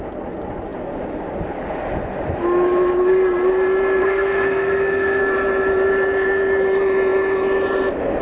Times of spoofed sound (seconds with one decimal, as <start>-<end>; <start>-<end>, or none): 4.0-5.2